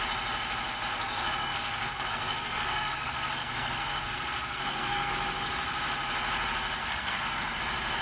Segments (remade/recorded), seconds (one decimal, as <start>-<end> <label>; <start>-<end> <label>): 0.0-0.9 recorded; 0.9-5.1 remade; 5.1-6.8 recorded; 6.8-7.6 remade; 7.6-8.0 recorded